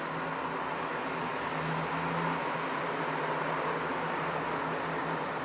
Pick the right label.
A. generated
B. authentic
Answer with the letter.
B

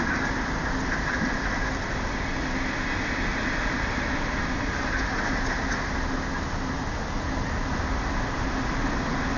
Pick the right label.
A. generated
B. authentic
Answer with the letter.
B